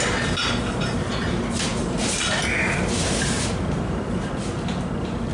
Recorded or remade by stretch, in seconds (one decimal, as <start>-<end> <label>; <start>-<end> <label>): 0.0-5.3 recorded

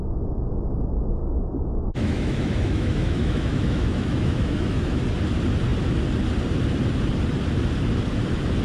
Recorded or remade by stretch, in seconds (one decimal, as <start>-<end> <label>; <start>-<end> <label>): 0.0-1.2 recorded; 1.2-5.0 remade; 5.0-8.6 recorded

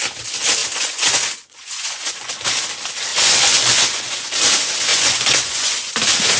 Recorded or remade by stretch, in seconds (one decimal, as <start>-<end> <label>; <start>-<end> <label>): 0.0-0.6 recorded; 0.6-2.3 remade; 2.3-3.1 recorded; 3.1-4.3 remade; 4.3-4.9 recorded; 4.9-5.9 remade; 5.9-6.4 recorded

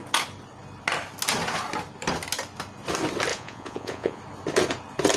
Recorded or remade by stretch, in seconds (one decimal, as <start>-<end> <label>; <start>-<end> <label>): 0.0-3.3 recorded; 3.3-4.2 remade; 4.2-5.2 recorded

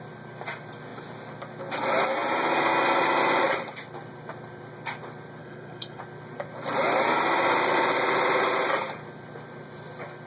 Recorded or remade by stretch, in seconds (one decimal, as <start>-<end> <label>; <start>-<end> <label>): 0.0-5.4 recorded; 5.4-6.0 remade; 6.0-10.3 recorded

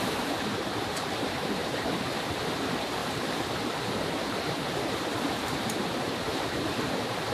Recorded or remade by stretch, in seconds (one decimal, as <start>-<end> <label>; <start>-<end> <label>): 0.0-3.0 remade; 3.0-5.2 recorded; 5.2-7.3 remade

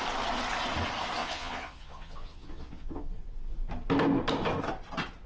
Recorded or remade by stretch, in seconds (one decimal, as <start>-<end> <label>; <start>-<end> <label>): 0.0-1.2 recorded; 1.2-3.1 remade; 3.1-5.3 recorded